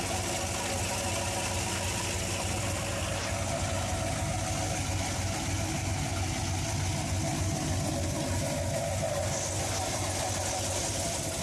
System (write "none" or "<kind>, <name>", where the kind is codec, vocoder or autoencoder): none